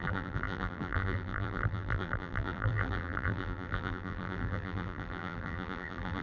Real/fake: fake